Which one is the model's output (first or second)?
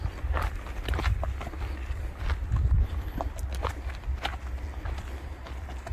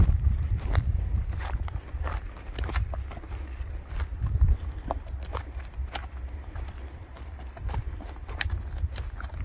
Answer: second